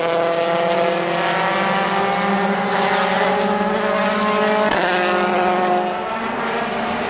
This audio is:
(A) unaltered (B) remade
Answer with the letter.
A